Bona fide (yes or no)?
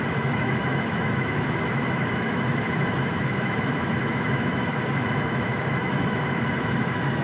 no